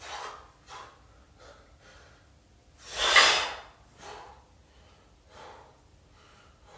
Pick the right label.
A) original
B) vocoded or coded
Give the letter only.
A